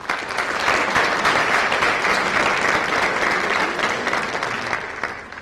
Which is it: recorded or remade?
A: recorded